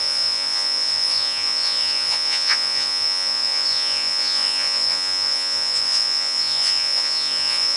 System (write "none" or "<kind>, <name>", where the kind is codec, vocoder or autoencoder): vocoder, Vocos